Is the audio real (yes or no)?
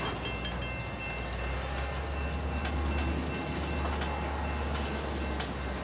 yes